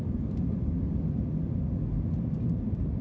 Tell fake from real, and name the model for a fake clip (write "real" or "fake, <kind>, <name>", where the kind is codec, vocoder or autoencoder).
real